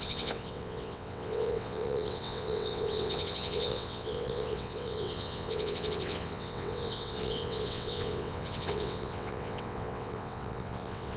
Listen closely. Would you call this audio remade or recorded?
remade